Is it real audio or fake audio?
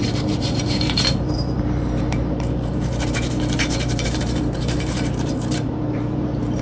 fake